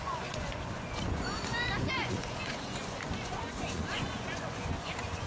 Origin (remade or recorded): remade